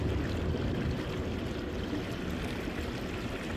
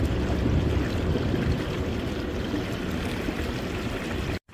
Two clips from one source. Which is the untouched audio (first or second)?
first